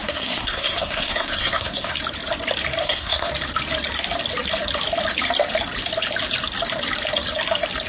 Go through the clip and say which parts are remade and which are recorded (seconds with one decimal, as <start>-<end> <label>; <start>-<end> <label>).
0.0-2.0 remade; 2.0-2.8 recorded; 2.8-3.3 remade; 3.3-7.9 recorded